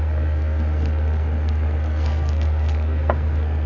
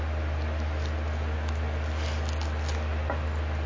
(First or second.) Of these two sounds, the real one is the second